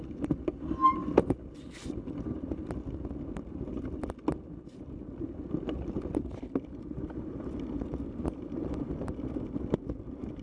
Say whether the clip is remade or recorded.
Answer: recorded